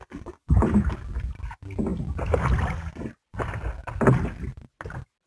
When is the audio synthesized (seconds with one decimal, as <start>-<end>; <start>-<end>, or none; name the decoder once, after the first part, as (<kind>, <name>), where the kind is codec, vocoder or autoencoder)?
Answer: none